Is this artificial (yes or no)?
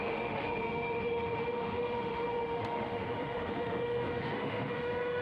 yes